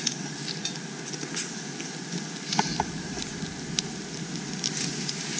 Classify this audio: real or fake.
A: real